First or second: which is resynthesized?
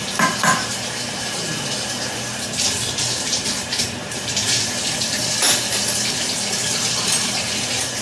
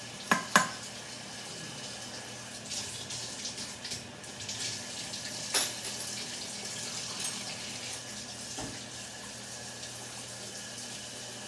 first